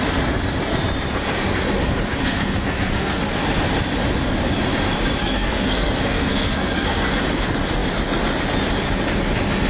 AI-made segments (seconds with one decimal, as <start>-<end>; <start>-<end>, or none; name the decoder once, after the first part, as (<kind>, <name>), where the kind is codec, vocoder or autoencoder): 2.2-3.2 (codec, SNAC); 5.2-7.2